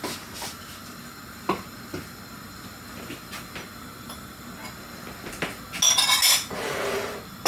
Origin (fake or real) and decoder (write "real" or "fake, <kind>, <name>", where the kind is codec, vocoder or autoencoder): real